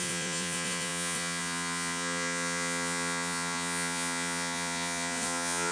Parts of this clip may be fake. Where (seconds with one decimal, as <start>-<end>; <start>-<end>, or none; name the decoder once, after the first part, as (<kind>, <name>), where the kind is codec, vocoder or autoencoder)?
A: 0.0-5.7 (vocoder, Vocos)